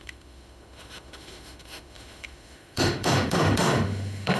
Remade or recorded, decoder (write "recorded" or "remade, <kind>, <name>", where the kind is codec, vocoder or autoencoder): remade, autoencoder, DAC-VAE